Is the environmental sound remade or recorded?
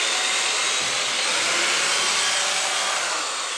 recorded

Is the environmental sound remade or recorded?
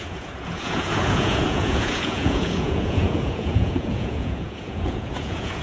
remade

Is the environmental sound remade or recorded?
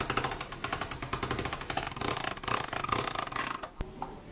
recorded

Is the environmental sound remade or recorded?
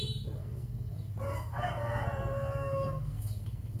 remade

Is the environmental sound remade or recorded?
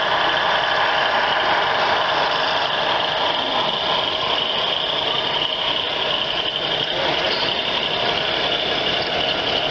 recorded